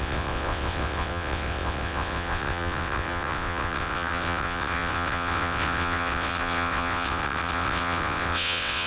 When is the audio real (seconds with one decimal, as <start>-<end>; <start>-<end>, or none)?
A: none